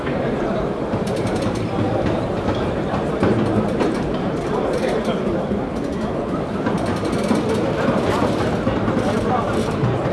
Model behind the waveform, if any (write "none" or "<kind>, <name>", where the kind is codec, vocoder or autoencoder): vocoder, BigVGAN v2